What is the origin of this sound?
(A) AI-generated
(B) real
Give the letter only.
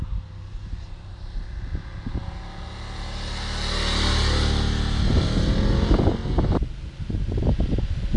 B